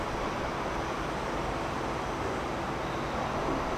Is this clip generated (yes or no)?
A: no